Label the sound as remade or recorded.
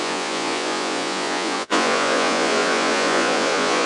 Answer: remade